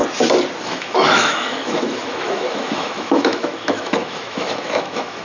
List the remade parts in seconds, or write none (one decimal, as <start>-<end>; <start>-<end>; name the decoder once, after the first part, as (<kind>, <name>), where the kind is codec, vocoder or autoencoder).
0.6-5.2 (autoencoder, DAC-VAE)